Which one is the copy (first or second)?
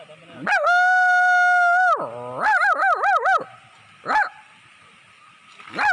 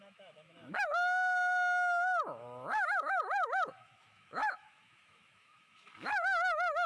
second